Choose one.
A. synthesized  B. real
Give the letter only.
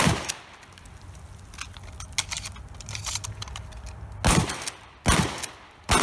B